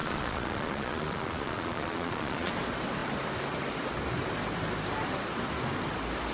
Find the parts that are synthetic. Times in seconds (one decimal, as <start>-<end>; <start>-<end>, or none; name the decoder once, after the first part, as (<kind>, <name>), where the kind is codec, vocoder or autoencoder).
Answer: 0.0-2.5 (vocoder, Vocos)